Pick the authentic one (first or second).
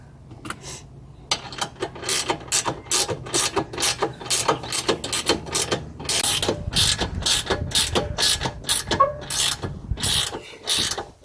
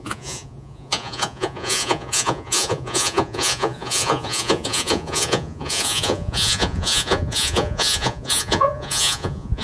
first